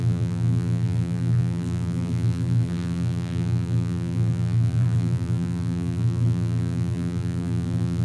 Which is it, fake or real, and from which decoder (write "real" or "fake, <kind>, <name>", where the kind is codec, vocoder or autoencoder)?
fake, vocoder, BigVGAN v2